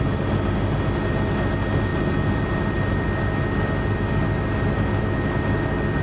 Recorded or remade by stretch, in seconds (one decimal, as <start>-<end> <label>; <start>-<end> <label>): 0.0-6.0 recorded